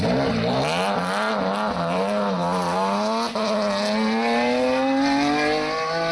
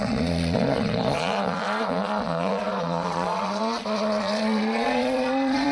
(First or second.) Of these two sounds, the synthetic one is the second